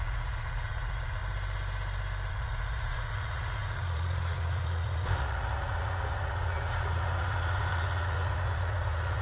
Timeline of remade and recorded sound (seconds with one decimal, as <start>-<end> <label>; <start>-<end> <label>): 0.0-1.2 remade; 1.2-2.3 recorded; 2.3-9.2 remade

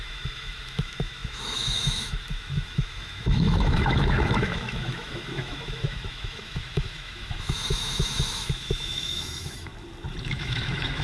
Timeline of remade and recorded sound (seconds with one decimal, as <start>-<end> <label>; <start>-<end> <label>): 0.0-9.7 remade; 9.7-10.2 recorded; 10.2-11.0 remade

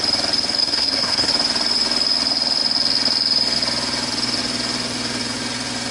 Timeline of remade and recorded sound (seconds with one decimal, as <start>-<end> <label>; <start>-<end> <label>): 0.0-0.6 recorded; 0.6-1.3 remade; 1.3-5.9 recorded

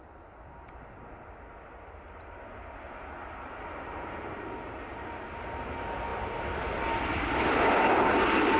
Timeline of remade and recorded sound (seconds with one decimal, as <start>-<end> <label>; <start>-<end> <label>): 0.0-8.6 recorded

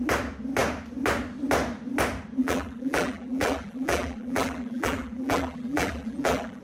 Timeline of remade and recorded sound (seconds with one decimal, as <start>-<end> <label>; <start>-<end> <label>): 0.0-2.4 recorded; 2.4-6.6 remade